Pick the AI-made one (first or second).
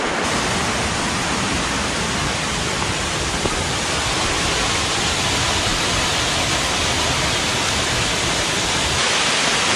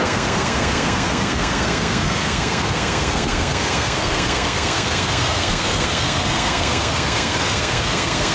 second